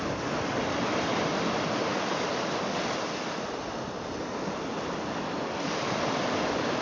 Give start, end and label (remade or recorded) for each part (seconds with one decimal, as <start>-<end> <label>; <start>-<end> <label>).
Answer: 0.0-6.8 recorded